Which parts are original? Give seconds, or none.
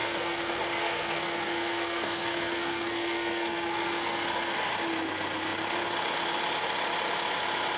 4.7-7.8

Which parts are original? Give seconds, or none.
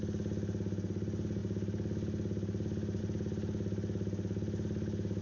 0.0-5.2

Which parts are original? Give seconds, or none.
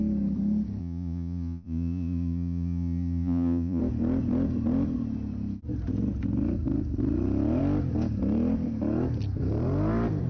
0.0-0.8; 3.8-10.3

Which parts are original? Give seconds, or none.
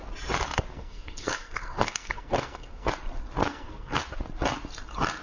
0.0-0.7; 2.9-3.4; 4.0-5.2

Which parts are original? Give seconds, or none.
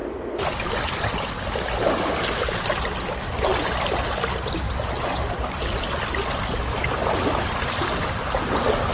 0.0-8.9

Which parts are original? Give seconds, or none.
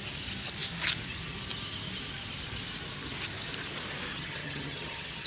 0.0-4.1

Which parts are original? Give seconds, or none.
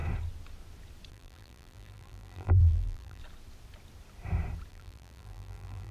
0.0-1.1; 3.2-4.7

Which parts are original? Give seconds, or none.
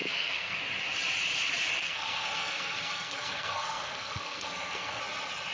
0.6-1.8; 5.0-5.5